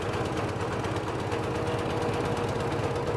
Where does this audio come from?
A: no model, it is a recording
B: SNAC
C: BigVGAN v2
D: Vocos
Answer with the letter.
A